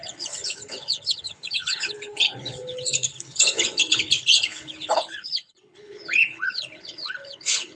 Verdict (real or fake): fake